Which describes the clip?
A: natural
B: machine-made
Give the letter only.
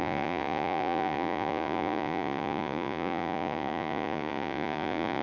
B